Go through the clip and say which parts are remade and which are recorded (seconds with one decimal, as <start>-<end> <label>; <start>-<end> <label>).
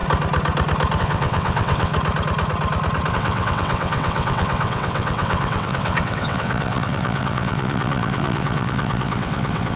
0.0-1.0 recorded; 1.0-1.9 remade; 1.9-3.1 recorded; 3.1-9.8 remade